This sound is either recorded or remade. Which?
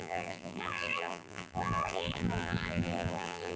remade